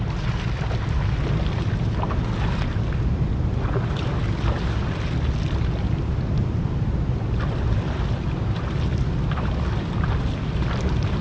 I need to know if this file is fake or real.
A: real